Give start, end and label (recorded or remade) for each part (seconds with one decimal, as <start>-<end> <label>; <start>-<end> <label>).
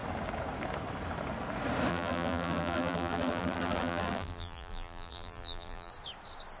0.0-1.9 recorded; 1.9-5.9 remade; 5.9-6.6 recorded